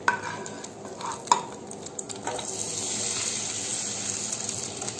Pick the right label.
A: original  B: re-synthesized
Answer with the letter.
A